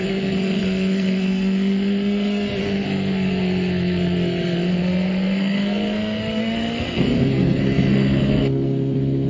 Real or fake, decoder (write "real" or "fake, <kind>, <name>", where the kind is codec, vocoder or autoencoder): fake, codec, SNAC